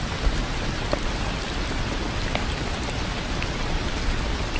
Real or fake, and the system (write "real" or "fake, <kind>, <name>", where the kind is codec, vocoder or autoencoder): real